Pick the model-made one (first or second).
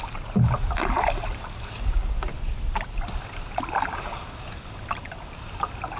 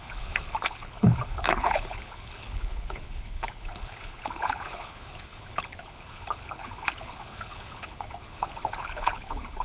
second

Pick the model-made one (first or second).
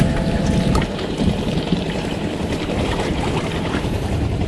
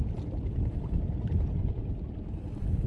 first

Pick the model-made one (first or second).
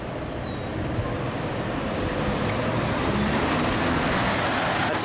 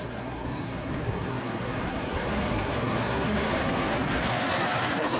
second